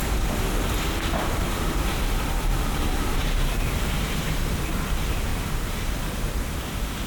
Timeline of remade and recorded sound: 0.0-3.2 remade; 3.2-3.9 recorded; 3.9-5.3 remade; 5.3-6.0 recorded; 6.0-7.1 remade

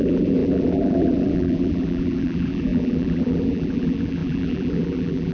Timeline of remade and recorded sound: 0.0-5.3 remade